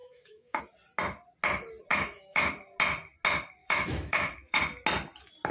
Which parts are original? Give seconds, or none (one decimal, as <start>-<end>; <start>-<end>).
0.6-1.9; 2.5-3.6; 4.6-5.5